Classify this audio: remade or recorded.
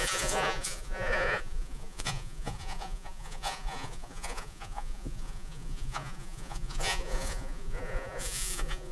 remade